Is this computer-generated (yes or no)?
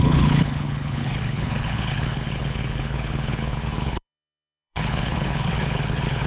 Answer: yes